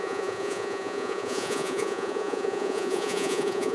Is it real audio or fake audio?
fake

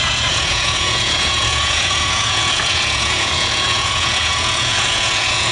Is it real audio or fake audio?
fake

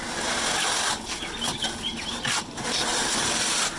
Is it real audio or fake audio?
real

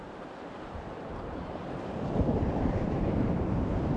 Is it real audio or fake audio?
fake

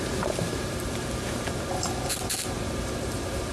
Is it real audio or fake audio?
fake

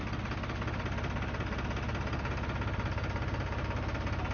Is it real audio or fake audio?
real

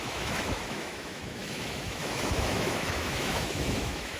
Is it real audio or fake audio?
fake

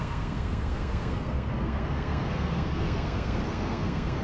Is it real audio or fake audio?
fake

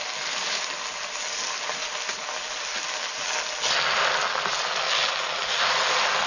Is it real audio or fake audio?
real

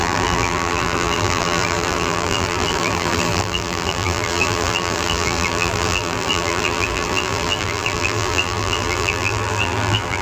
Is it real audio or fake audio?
fake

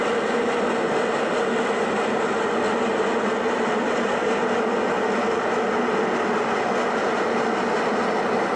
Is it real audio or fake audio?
real